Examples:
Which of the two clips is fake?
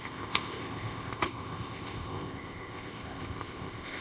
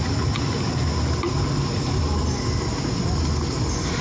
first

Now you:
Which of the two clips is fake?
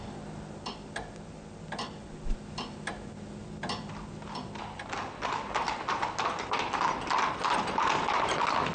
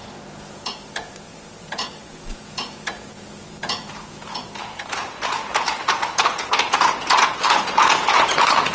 second